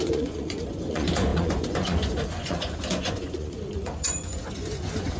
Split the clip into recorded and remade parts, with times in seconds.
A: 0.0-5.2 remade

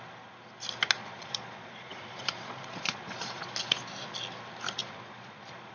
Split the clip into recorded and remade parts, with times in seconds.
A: 0.0-1.0 recorded; 1.0-3.5 remade; 3.5-4.8 recorded; 4.8-5.7 remade

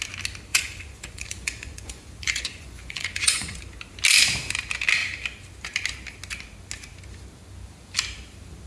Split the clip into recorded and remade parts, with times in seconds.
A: 0.0-0.5 recorded; 0.5-3.6 remade; 3.6-8.7 recorded